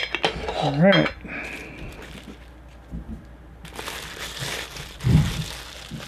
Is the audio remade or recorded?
recorded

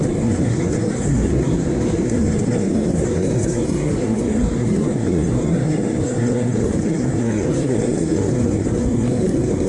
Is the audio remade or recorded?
remade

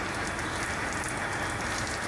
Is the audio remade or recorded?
recorded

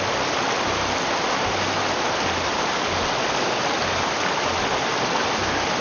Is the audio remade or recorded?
recorded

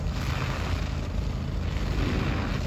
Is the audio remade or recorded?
recorded